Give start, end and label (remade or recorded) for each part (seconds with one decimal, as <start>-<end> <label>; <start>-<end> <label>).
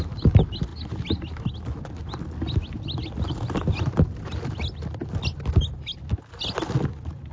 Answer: 0.0-7.3 recorded